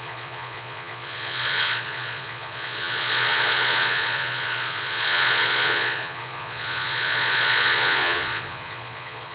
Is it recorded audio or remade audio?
remade